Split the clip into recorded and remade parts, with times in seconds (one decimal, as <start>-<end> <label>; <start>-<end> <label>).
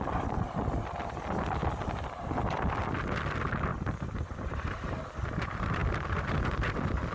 0.0-3.7 recorded; 3.7-4.5 remade; 4.5-7.1 recorded